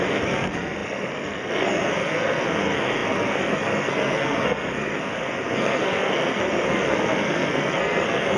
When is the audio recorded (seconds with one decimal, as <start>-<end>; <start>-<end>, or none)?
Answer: none